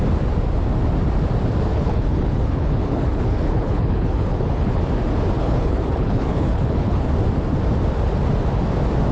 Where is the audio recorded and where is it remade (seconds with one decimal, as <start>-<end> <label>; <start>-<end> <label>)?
0.0-1.7 recorded; 1.7-4.8 remade; 4.8-5.4 recorded; 5.4-7.1 remade; 7.1-9.1 recorded